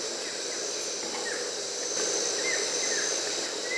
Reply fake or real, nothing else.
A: real